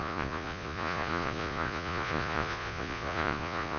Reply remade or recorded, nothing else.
remade